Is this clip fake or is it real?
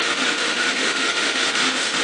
fake